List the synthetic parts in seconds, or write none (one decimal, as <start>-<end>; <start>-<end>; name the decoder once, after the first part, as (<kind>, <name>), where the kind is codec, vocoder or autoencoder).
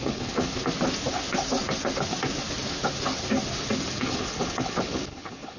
0.0-0.5 (codec, HILCodec); 3.9-5.6